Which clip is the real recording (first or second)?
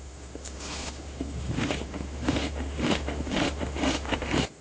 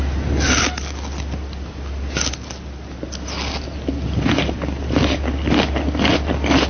second